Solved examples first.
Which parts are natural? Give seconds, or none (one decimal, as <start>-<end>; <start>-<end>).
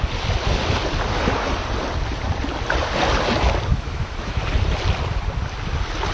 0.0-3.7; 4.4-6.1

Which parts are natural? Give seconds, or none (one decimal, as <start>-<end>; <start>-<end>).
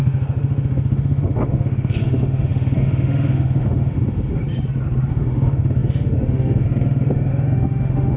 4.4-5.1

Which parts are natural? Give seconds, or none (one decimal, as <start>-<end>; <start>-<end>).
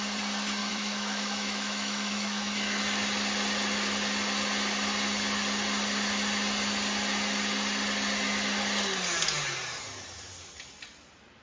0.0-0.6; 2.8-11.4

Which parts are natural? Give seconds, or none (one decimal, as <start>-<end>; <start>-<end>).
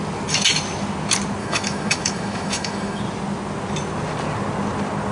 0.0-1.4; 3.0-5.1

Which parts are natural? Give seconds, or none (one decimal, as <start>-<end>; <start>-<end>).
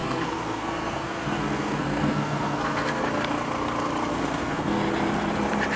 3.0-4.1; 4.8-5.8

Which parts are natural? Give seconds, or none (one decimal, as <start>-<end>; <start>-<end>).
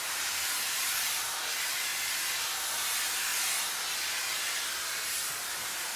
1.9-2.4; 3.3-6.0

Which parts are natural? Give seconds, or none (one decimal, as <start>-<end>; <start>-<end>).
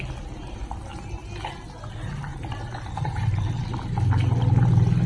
0.0-2.3; 3.4-5.1